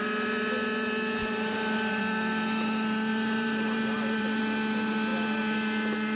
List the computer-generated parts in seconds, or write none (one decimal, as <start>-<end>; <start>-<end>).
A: 1.2-2.0; 3.1-4.4